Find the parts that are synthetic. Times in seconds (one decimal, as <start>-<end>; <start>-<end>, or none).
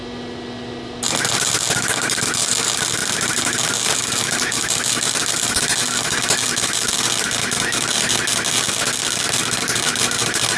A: none